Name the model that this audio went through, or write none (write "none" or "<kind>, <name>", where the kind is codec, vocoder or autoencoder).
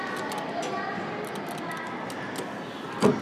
none